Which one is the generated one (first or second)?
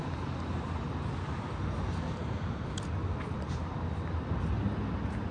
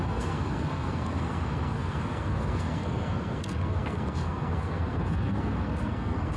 second